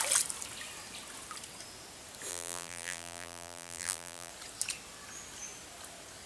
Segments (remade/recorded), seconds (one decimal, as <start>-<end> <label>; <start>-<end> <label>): 0.0-2.3 recorded; 2.3-4.3 remade; 4.3-6.3 recorded